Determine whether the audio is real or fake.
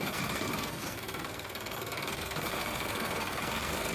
fake